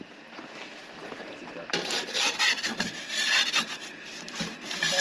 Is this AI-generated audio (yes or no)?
no